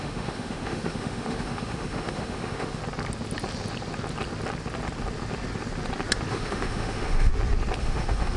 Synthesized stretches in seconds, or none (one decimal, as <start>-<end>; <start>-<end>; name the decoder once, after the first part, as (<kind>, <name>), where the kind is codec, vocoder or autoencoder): 0.0-2.8 (autoencoder, DAC-VAE); 6.3-7.3; 7.8-8.4